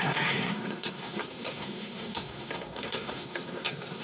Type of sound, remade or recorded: remade